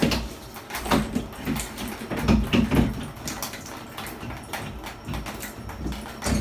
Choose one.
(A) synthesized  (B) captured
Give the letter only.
B